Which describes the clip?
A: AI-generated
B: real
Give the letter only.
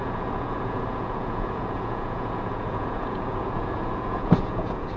A